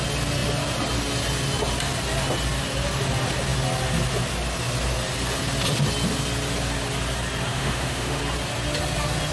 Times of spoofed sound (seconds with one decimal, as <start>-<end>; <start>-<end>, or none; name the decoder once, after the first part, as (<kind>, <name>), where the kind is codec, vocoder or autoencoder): 7.5-8.2 (autoencoder, DAC-VAE)